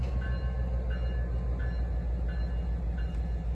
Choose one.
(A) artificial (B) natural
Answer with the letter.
B